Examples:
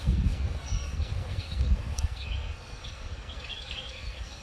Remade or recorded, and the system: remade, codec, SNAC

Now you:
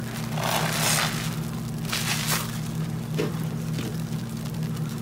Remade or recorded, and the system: recorded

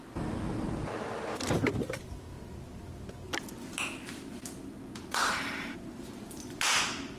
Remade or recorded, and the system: recorded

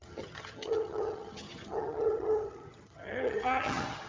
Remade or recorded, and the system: remade, vocoder, HiFi-GAN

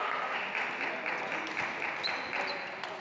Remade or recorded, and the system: recorded